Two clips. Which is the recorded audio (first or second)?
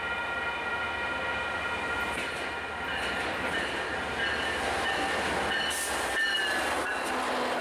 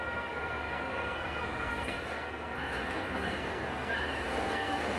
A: first